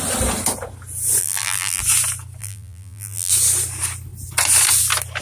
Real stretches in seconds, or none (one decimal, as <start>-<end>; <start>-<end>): 0.0-1.2; 1.8-2.4; 3.3-5.2